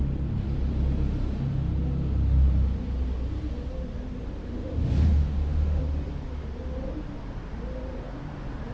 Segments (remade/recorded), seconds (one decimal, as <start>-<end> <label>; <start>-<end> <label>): 0.0-4.5 recorded; 4.5-5.8 remade; 5.8-8.7 recorded